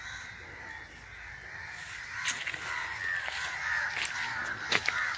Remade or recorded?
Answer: recorded